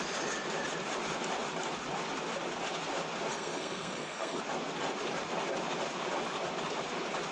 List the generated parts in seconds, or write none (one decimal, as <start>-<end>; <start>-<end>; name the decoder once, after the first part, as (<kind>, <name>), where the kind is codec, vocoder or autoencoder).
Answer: 3.3-4.4 (codec, SNAC)